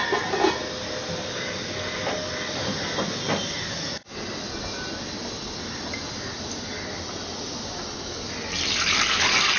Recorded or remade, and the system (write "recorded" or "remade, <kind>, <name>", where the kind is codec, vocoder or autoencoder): recorded